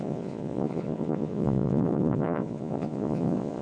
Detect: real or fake fake